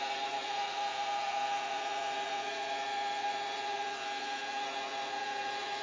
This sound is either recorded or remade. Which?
remade